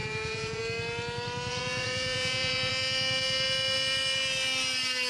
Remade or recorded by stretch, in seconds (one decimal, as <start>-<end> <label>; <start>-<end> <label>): 0.0-0.6 remade; 0.6-1.5 recorded; 1.5-2.7 remade; 2.7-5.1 recorded